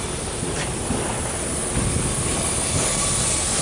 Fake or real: real